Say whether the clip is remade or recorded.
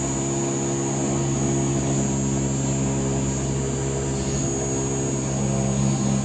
recorded